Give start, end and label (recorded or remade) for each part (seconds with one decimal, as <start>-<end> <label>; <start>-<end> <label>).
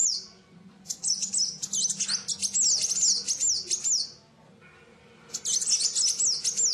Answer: 0.0-1.3 remade; 1.3-6.7 recorded